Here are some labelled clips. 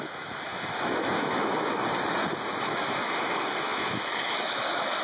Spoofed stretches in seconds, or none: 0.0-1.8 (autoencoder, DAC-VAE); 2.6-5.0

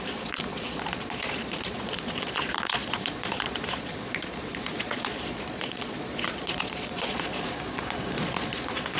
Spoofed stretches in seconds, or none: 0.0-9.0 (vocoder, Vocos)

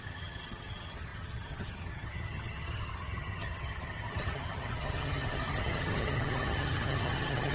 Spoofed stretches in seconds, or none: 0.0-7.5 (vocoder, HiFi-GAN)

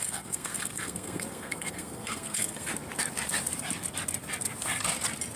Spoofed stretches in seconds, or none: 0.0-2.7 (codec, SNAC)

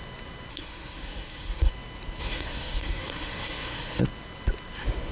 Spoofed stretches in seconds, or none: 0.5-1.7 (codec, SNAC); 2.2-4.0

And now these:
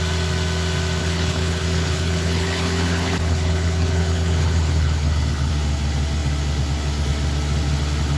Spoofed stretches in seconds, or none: 1.0-5.5 (codec, HILCodec)

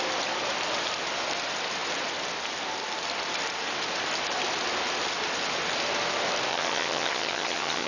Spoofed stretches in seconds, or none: 6.5-7.9 (vocoder, HiFi-GAN)